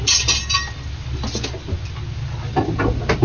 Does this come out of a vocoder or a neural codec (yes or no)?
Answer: no